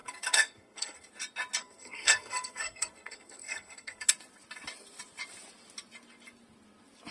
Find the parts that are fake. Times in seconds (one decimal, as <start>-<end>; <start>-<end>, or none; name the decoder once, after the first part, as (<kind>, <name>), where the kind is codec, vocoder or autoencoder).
0.0-1.1 (codec, SNAC); 1.6-4.1